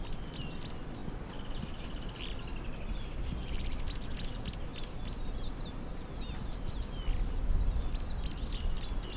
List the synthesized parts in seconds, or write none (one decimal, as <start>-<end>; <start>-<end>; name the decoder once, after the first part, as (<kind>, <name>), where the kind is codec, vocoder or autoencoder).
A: none